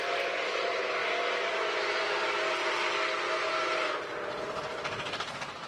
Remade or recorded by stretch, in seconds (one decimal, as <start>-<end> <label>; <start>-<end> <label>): 0.0-5.7 recorded